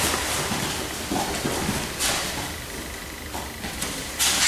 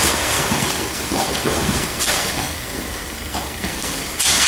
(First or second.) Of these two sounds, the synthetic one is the second